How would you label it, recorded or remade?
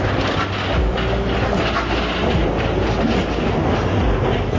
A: recorded